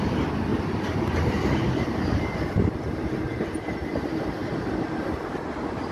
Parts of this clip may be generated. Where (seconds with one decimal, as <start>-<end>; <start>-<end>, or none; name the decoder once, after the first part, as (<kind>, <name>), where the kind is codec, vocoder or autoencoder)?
0.5-4.0 (vocoder, BigVGAN v2)